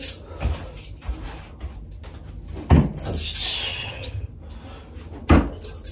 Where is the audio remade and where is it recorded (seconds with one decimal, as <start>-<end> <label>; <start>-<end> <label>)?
0.0-3.7 recorded; 3.7-4.3 remade; 4.3-5.9 recorded